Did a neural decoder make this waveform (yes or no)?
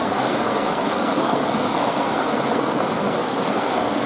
yes